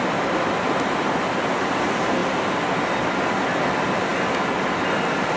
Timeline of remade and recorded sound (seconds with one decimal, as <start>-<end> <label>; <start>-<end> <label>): 0.0-5.4 recorded